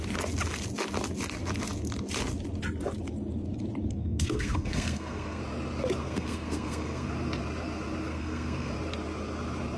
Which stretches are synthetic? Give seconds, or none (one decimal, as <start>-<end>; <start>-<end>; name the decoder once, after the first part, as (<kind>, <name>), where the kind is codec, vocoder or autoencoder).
4.0-5.4 (codec, SNAC); 6.0-7.1; 8.1-8.7